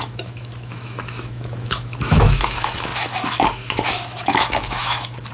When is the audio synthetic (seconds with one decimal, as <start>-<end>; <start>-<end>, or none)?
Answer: 0.0-5.3